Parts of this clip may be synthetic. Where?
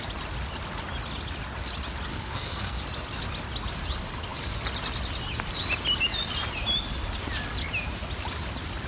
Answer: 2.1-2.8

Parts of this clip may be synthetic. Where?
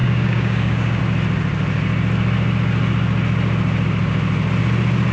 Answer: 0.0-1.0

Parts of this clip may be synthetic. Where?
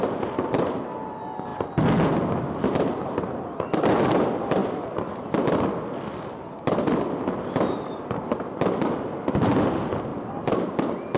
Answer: 10.1-10.7